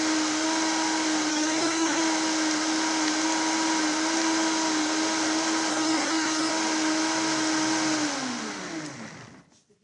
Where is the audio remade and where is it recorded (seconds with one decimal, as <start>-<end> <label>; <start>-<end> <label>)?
0.0-1.3 recorded; 1.3-2.0 remade; 2.0-5.7 recorded; 5.7-6.5 remade; 6.5-9.8 recorded